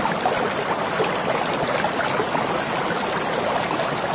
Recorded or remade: recorded